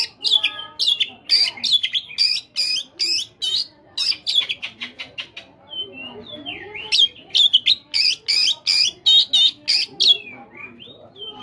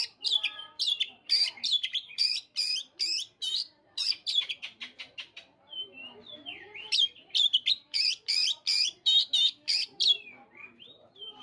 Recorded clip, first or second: first